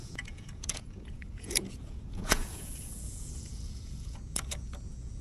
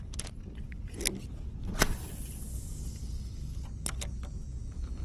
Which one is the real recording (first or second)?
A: second